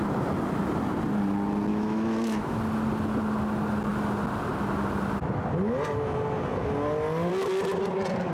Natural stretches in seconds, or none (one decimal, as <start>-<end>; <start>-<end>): 0.0-1.7; 2.6-8.3